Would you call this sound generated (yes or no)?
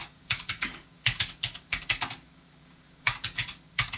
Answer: yes